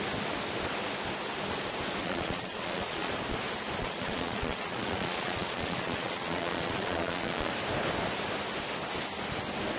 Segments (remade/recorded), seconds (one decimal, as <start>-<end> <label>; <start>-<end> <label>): 0.0-2.0 recorded; 2.0-3.1 remade; 3.1-3.8 recorded; 3.8-7.5 remade; 7.5-9.8 recorded